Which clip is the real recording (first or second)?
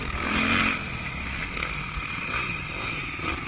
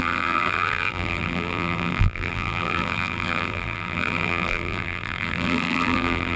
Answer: first